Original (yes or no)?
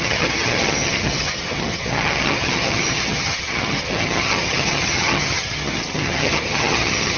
no